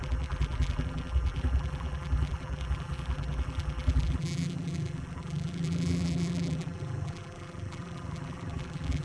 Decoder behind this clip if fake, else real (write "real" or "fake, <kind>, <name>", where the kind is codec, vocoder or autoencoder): fake, vocoder, BigVGAN v2